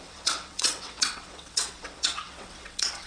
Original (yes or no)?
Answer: no